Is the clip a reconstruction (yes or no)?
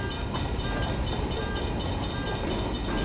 no